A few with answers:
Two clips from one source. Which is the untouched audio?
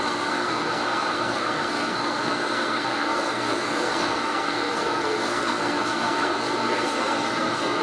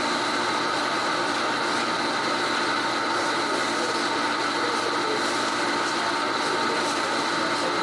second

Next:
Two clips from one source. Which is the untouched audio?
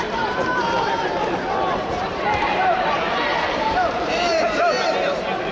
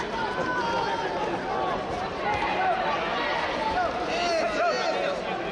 second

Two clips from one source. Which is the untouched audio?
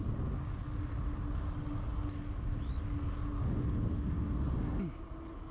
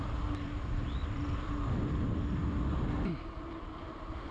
first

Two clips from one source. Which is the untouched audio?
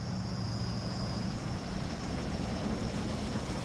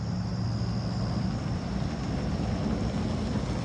second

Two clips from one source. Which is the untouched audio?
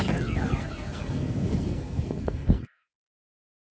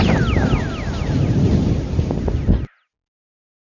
second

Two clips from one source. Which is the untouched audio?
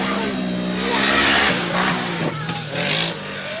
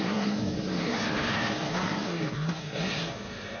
first